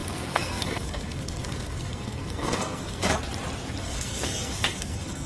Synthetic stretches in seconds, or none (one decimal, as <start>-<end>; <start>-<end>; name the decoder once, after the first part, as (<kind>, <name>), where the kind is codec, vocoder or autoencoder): 0.0-3.2 (codec, SNAC); 3.8-5.3